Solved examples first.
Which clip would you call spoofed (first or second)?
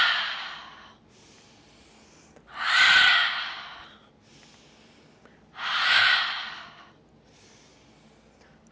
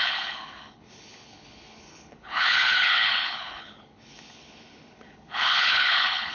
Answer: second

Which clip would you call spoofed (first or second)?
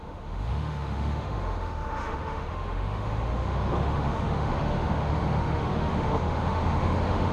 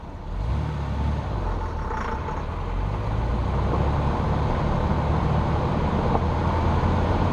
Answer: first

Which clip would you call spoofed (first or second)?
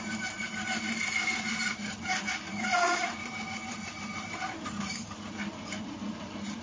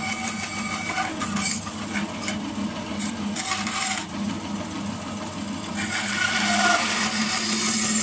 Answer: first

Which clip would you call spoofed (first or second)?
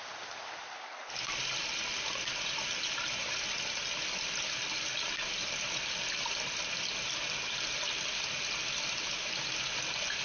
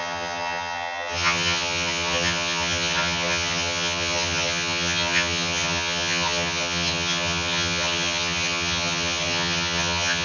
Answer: second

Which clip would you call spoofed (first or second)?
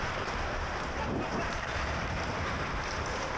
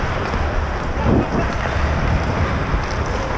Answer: first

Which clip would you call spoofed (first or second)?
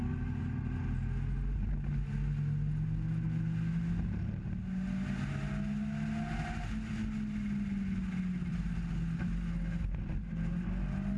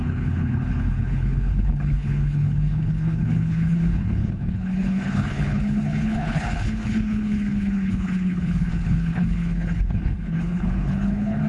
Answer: second